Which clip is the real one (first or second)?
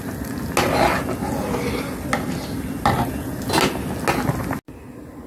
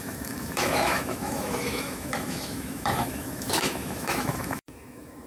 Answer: first